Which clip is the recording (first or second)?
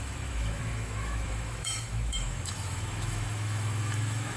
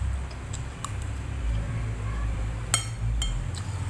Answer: second